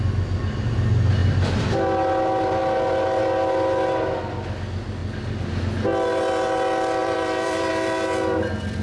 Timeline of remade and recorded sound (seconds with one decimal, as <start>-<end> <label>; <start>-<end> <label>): 0.0-1.2 recorded; 1.2-1.7 remade; 1.7-5.0 recorded; 5.0-5.6 remade; 5.6-7.0 recorded; 7.0-7.7 remade; 7.7-8.8 recorded